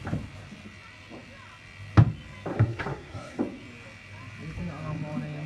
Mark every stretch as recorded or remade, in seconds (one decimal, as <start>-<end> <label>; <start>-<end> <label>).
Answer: 0.0-2.5 recorded; 2.5-3.4 remade; 3.4-5.5 recorded